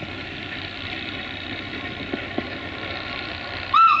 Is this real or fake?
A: real